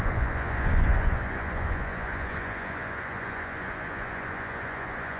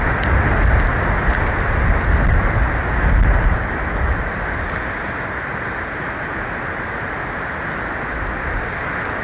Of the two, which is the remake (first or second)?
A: first